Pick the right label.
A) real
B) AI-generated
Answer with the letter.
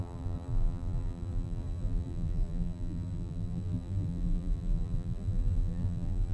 B